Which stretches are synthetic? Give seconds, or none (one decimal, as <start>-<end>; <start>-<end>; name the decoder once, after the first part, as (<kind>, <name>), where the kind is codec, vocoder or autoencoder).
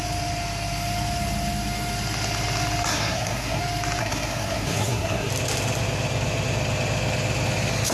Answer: 2.9-3.6 (codec, SNAC); 4.0-5.3